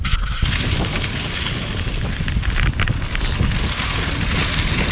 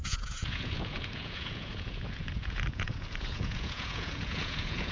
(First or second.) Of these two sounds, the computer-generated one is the second